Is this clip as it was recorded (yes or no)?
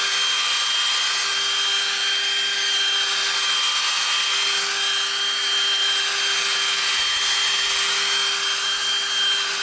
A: yes